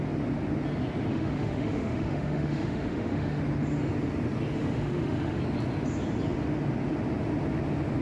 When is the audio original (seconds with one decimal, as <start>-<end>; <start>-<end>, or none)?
0.0-1.1; 3.4-4.6; 5.4-8.0